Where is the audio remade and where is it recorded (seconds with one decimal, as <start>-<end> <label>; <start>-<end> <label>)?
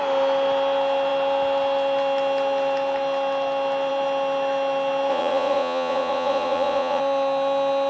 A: 0.0-5.1 recorded; 5.1-7.0 remade; 7.0-7.9 recorded